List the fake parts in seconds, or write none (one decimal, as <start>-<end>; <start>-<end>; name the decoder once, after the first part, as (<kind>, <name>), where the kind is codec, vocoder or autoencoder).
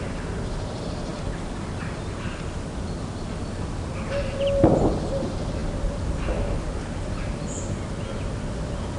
none